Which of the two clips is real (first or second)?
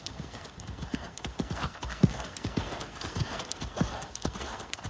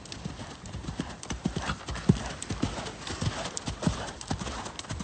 second